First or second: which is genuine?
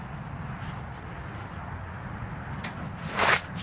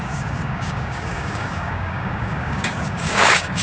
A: first